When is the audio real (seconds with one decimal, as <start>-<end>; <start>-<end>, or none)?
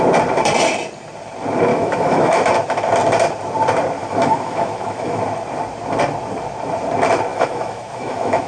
0.0-1.7; 2.5-4.0; 5.2-7.3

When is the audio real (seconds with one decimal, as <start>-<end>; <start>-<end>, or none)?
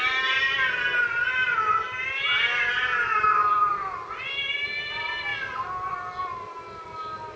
0.0-7.4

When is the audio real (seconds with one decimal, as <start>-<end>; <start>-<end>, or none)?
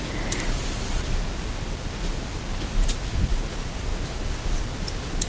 0.0-5.3